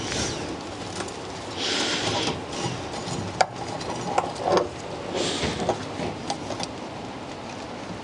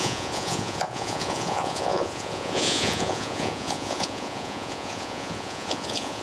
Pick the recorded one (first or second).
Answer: first